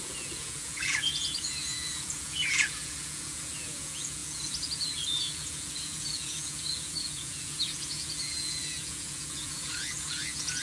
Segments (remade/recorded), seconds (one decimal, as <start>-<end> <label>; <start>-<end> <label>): 0.0-10.6 remade